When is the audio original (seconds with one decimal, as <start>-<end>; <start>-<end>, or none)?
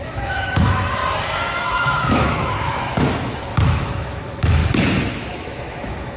1.0-1.6; 4.6-5.1